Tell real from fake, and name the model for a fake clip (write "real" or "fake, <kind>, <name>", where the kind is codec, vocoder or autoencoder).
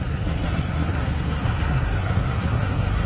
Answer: fake, codec, SNAC